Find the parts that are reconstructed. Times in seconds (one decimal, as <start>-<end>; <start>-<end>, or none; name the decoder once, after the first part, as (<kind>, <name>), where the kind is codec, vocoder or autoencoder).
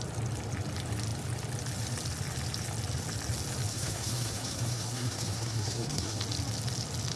3.7-6.2 (codec, SNAC)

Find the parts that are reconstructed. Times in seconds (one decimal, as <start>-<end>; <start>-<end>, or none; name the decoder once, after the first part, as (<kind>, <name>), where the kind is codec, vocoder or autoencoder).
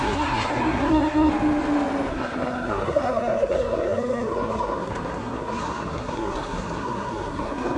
0.0-1.3 (codec, SNAC); 2.1-7.8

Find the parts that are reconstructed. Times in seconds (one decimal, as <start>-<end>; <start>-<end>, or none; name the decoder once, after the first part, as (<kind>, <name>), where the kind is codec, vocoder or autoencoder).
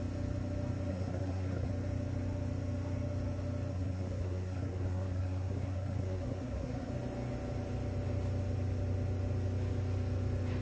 0.9-1.7 (codec, SNAC); 3.7-6.9